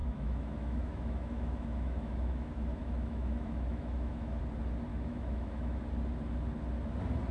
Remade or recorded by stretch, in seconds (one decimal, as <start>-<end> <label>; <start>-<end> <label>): 0.0-4.4 remade; 4.4-4.9 recorded; 4.9-5.8 remade; 5.8-7.3 recorded